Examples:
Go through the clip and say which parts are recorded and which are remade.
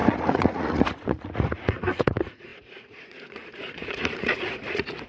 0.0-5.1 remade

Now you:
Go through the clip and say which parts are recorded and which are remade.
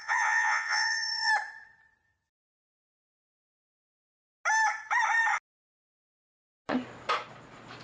0.0-1.3 remade; 1.3-7.8 recorded